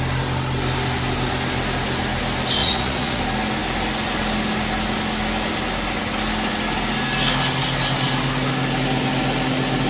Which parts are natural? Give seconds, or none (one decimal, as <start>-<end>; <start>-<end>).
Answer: 0.0-2.6; 3.2-9.9